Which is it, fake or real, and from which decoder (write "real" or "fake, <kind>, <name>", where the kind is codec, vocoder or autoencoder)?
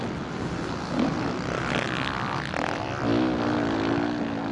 real